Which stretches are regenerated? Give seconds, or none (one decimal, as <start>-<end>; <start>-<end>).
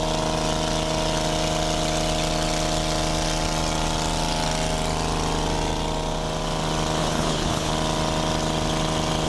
7.0-7.7